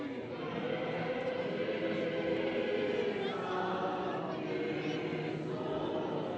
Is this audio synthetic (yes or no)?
no